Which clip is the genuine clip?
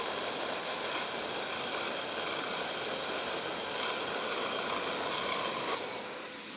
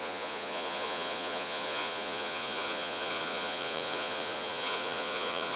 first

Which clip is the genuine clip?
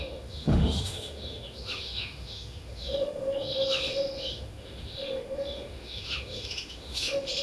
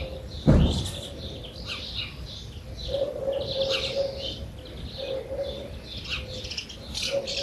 second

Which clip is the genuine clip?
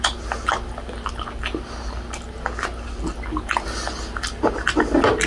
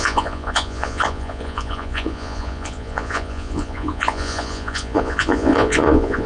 first